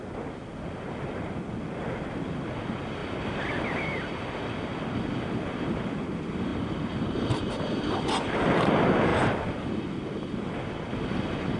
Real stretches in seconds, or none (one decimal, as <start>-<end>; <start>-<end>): 0.0-6.5; 7.6-11.6